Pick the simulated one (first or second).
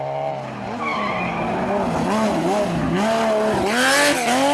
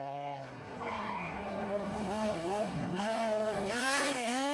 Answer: second